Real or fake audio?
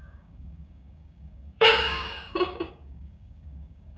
fake